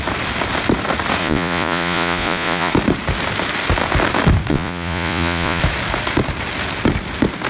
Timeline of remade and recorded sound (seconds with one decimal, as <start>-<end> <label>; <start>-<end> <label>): 0.0-1.2 recorded; 1.2-2.7 remade; 2.7-4.5 recorded; 4.5-5.6 remade; 5.6-7.5 recorded